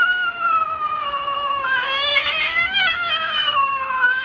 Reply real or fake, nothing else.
fake